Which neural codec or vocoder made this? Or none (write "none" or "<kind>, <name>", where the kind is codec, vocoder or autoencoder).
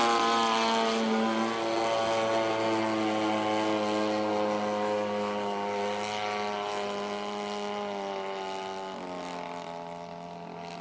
none